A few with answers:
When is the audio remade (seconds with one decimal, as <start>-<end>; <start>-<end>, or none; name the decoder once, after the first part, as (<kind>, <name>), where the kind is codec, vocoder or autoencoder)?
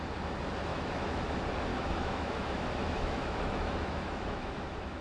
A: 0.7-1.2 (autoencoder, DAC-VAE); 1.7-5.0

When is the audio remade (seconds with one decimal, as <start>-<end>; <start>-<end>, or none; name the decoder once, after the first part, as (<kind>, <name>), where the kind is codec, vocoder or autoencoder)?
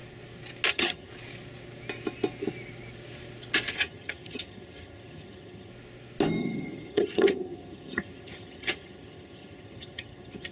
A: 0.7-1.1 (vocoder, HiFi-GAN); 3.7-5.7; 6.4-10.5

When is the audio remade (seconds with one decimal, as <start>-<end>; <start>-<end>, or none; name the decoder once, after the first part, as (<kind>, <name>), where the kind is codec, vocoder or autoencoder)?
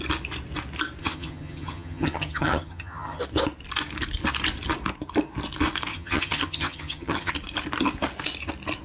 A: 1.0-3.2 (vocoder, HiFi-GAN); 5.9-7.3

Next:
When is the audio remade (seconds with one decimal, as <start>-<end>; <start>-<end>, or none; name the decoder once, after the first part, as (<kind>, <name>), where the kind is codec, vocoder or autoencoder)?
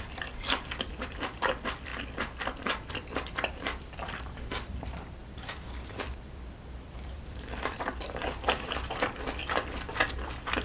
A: 0.0-1.9 (vocoder, BigVGAN v2); 2.9-10.6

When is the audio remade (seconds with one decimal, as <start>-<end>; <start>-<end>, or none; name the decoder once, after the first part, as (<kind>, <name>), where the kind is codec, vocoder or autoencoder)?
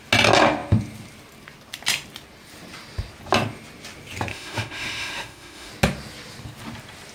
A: 4.3-5.7 (autoencoder, DAC-VAE)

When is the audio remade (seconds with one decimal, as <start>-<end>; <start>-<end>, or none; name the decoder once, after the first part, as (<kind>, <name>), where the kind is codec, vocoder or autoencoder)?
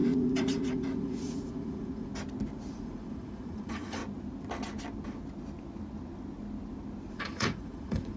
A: 0.0-2.1 (vocoder, Vocos); 2.7-4.0; 7.1-8.2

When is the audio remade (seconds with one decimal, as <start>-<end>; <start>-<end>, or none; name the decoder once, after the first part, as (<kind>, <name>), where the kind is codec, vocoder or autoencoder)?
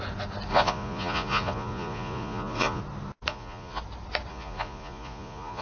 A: 0.5-2.8 (vocoder, Vocos); 3.3-3.8; 4.3-5.6